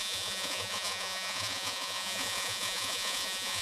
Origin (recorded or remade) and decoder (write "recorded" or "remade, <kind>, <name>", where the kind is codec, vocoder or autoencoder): remade, vocoder, Vocos